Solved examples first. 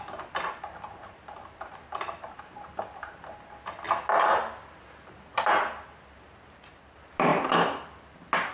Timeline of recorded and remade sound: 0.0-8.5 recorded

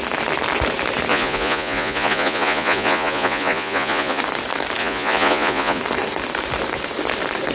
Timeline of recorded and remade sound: 0.0-1.1 recorded; 1.1-4.2 remade; 4.2-4.8 recorded; 4.8-5.8 remade; 5.8-7.5 recorded

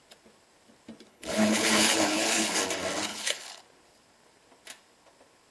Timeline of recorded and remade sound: 0.0-1.1 recorded; 1.1-2.6 remade; 2.6-3.1 recorded; 3.1-3.6 remade; 3.6-5.5 recorded

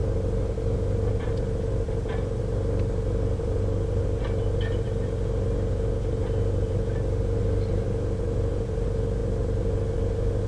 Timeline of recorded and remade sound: 0.0-10.5 recorded

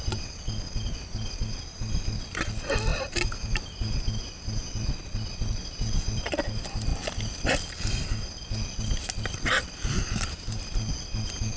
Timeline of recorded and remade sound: 0.0-11.6 recorded

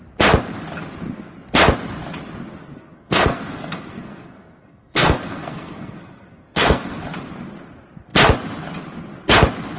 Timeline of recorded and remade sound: 0.0-2.6 recorded; 2.6-6.9 remade; 6.9-9.8 recorded

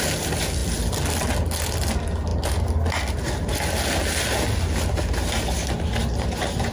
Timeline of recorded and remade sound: 0.0-6.7 recorded

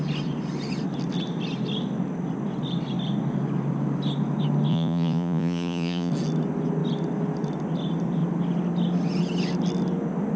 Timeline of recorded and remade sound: 0.0-4.7 recorded; 4.7-6.1 remade; 6.1-10.4 recorded